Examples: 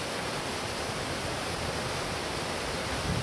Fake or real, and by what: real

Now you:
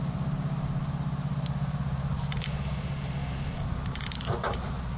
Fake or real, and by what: fake, vocoder, BigVGAN v2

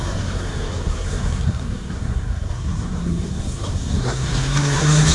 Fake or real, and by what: fake, codec, SNAC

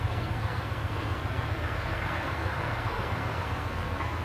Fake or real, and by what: fake, codec, SNAC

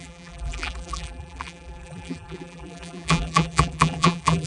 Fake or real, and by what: fake, vocoder, BigVGAN v2